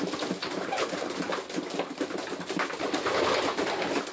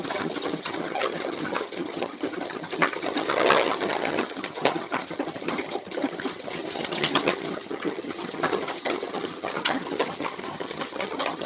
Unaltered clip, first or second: first